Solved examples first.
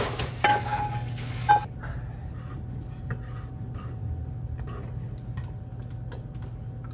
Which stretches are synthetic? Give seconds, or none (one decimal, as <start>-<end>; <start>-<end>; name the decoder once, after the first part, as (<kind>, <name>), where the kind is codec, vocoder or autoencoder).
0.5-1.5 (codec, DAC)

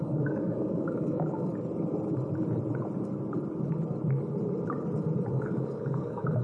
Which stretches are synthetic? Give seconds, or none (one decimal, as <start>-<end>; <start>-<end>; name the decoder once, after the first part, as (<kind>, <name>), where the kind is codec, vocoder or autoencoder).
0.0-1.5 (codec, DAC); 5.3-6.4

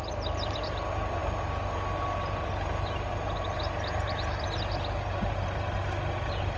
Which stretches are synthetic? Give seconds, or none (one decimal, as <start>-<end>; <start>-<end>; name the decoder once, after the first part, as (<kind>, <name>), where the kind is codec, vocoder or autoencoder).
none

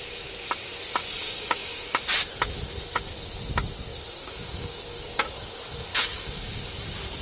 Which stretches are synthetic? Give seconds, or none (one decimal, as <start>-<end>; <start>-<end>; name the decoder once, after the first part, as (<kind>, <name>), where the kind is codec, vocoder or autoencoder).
1.0-2.0 (codec, DAC); 3.9-5.5; 5.9-6.7

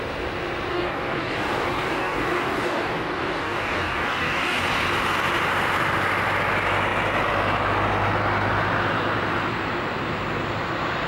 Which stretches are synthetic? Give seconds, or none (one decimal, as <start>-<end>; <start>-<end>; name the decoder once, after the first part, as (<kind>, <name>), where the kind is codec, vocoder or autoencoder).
0.7-4.6 (codec, DAC)